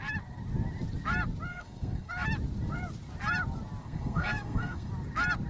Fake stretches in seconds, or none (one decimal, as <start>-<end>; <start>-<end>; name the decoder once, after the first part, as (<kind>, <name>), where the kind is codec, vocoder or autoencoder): 1.5-2.1 (codec, SNAC); 3.8-4.9